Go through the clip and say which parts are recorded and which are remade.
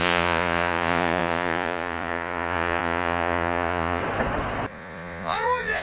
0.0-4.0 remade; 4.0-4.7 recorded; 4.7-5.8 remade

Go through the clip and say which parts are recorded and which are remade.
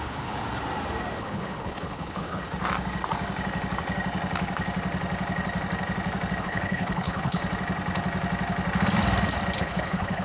0.0-0.4 remade; 0.4-1.2 recorded; 1.2-2.4 remade; 2.4-6.4 recorded; 6.4-7.4 remade; 7.4-9.6 recorded; 9.6-10.2 remade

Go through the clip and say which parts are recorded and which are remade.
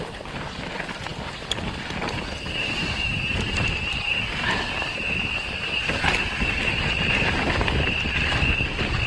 0.0-9.1 recorded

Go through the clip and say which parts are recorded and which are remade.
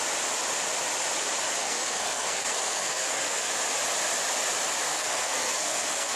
0.0-1.6 recorded; 1.6-3.5 remade; 3.5-4.9 recorded; 4.9-6.2 remade